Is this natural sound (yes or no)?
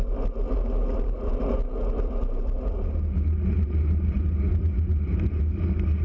yes